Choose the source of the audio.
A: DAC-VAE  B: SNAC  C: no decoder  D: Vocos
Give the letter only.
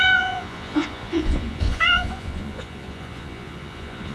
D